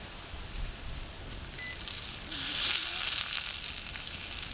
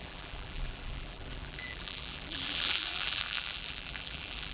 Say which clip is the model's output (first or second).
second